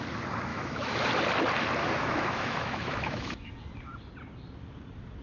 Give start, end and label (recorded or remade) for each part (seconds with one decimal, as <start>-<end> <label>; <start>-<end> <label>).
0.0-0.5 recorded; 0.5-1.1 remade; 1.1-1.8 recorded; 1.8-3.5 remade; 3.5-5.2 recorded